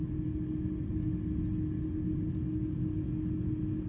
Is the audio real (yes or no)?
yes